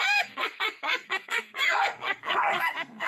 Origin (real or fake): fake